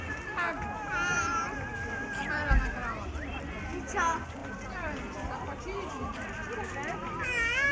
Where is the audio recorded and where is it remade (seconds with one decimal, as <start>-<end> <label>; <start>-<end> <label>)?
0.0-7.7 recorded